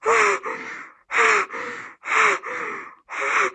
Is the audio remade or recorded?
recorded